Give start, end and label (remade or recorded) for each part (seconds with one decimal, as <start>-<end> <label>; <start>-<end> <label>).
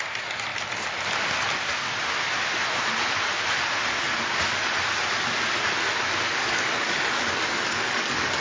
0.0-6.4 recorded; 6.4-8.4 remade